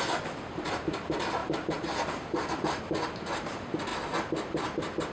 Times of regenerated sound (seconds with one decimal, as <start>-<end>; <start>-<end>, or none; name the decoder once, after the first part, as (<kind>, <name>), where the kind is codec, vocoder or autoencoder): 1.4-2.8 (vocoder, BigVGAN v2)